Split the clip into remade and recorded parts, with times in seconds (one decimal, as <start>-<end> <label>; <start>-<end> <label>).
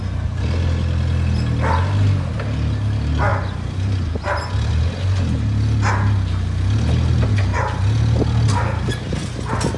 0.0-9.8 recorded